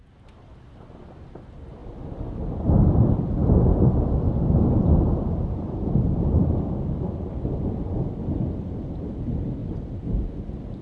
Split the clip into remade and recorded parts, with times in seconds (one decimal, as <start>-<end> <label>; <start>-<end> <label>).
0.0-1.8 remade; 1.8-2.4 recorded; 2.4-3.4 remade; 3.4-5.6 recorded; 5.6-7.1 remade; 7.1-8.2 recorded; 8.2-9.6 remade; 9.6-10.8 recorded